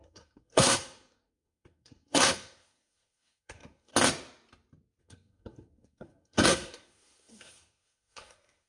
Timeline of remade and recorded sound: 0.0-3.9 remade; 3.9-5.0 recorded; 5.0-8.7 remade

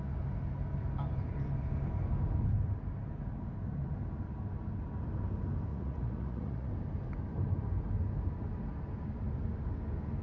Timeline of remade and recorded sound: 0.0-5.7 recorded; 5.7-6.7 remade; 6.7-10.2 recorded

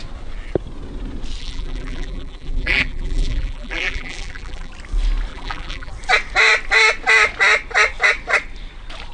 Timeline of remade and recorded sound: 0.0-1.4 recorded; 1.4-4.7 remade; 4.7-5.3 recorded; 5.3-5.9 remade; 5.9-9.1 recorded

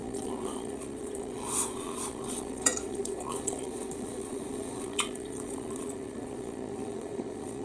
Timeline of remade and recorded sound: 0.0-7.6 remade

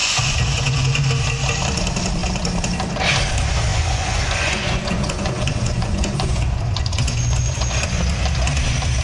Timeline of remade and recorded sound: 0.0-1.1 remade; 1.1-3.7 recorded; 3.7-8.0 remade; 8.0-9.0 recorded